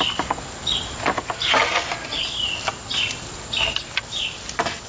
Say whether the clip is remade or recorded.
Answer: recorded